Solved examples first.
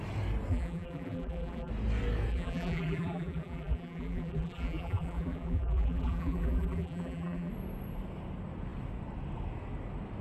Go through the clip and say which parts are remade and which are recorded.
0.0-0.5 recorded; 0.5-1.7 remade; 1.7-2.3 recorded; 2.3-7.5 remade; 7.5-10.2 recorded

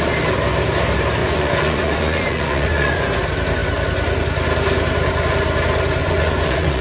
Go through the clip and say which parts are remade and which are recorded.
0.0-1.2 recorded; 1.2-3.2 remade; 3.2-6.0 recorded; 6.0-6.8 remade

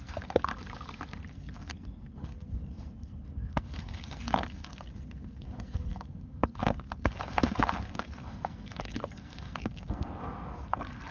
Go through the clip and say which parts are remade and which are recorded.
0.0-0.5 remade; 0.5-1.3 recorded; 1.3-11.1 remade

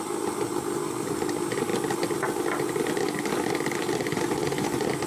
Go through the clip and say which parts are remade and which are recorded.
0.0-5.1 recorded

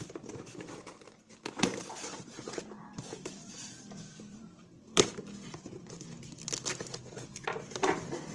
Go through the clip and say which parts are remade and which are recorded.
0.0-1.7 recorded; 1.7-5.2 remade; 5.2-8.3 recorded